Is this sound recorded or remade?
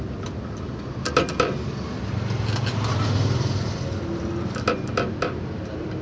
recorded